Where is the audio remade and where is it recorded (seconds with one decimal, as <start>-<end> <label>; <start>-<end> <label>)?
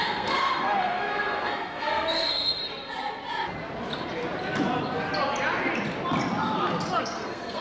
0.0-2.6 remade; 2.6-7.0 recorded; 7.0-7.6 remade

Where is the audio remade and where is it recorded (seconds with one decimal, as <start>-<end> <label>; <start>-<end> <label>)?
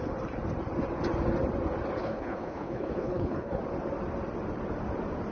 0.0-2.0 recorded; 2.0-3.6 remade; 3.6-5.3 recorded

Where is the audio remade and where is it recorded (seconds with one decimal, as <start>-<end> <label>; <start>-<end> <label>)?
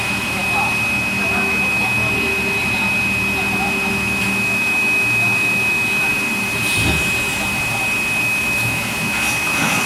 0.0-0.4 remade; 0.4-1.2 recorded; 1.2-2.0 remade; 2.0-3.9 recorded; 3.9-6.1 remade; 6.1-8.2 recorded; 8.2-9.9 remade